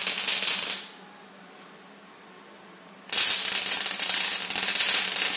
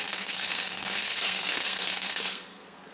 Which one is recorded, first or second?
first